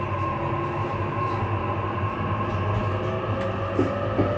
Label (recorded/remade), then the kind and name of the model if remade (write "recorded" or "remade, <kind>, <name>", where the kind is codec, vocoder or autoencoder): recorded